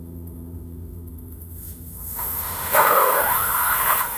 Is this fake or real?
fake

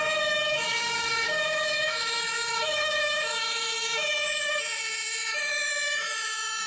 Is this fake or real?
fake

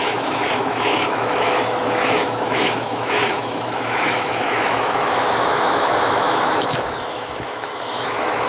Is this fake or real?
fake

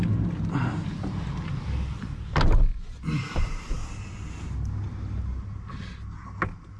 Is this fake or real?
real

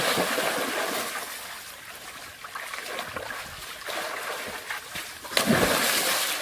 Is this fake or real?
real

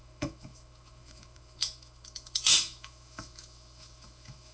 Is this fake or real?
fake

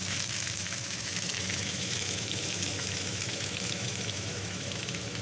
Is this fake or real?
fake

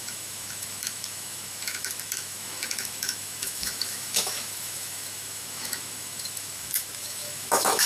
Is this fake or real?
fake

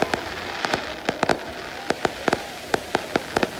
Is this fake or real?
real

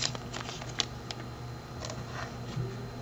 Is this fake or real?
real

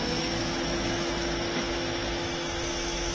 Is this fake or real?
fake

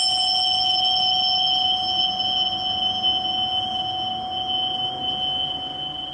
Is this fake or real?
real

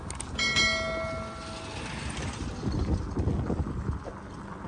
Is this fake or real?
real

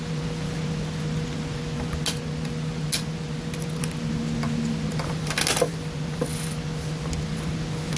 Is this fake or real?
real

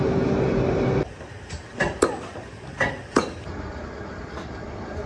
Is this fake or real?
real